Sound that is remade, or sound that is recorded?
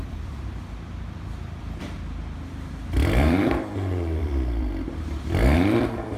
remade